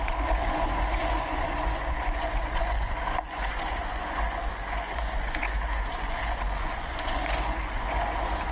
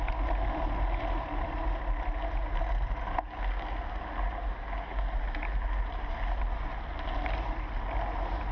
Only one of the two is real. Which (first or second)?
second